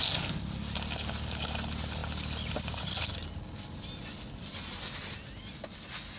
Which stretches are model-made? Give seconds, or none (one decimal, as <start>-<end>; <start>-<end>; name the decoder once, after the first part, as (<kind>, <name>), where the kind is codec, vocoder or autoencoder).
none